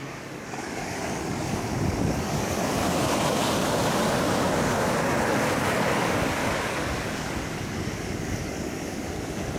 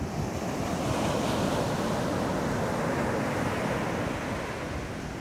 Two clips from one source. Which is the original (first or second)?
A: second